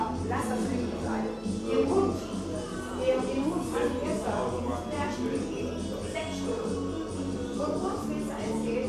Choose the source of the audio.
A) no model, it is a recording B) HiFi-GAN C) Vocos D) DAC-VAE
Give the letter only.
A